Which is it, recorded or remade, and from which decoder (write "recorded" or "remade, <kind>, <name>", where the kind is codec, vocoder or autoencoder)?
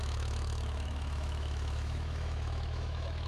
remade, autoencoder, DAC-VAE